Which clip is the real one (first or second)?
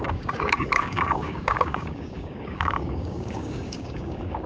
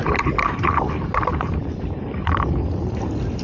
second